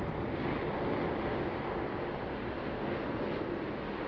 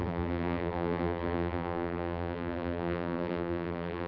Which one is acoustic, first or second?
first